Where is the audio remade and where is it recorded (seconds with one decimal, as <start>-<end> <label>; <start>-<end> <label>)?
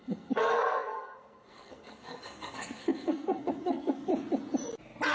0.0-4.1 remade; 4.1-5.1 recorded